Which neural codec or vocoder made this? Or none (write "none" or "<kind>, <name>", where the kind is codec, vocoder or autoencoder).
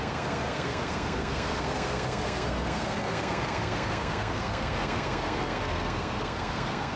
codec, SNAC